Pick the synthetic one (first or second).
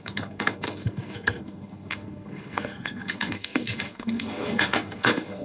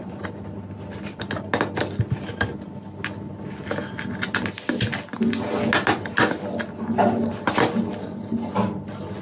first